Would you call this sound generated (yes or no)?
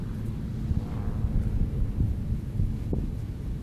no